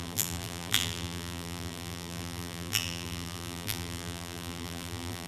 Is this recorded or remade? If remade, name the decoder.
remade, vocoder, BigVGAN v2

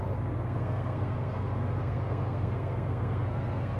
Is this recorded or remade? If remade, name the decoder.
remade, codec, SNAC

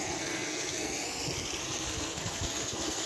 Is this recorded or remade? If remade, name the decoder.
remade, codec, SNAC